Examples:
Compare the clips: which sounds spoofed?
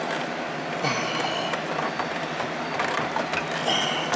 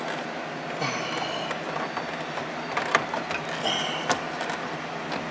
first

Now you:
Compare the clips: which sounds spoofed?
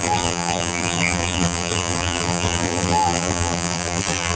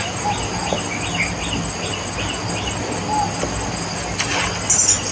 first